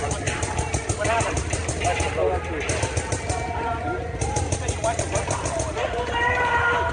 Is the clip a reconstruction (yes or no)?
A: no